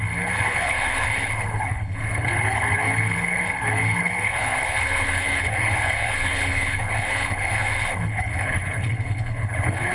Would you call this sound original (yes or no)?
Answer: no